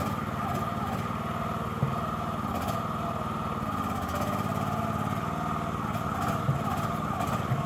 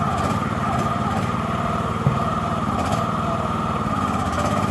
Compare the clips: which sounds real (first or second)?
first